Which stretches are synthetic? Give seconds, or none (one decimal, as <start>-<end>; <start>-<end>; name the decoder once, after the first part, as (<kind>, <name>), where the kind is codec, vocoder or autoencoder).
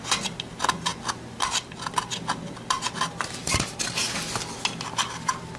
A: none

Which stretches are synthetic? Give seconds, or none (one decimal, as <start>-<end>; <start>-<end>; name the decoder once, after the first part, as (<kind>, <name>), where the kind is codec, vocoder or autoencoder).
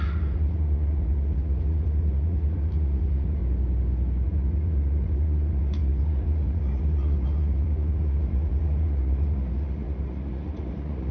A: 0.0-3.4 (vocoder, Vocos); 4.3-11.1